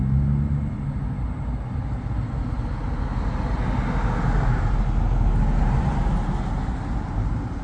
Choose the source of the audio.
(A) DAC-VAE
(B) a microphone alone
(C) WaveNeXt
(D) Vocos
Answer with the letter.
B